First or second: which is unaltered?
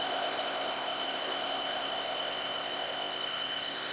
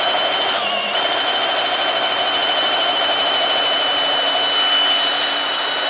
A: second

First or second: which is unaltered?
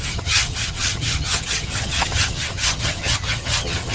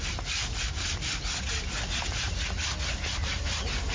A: second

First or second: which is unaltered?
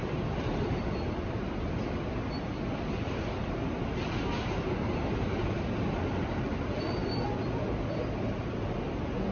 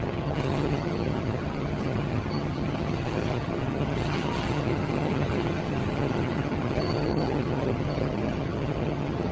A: first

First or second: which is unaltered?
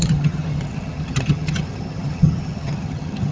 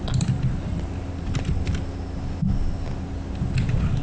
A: second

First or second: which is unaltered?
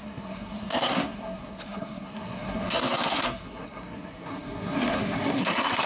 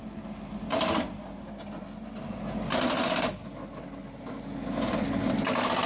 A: second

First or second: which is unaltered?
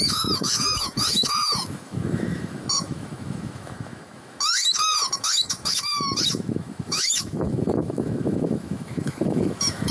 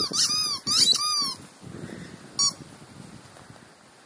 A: second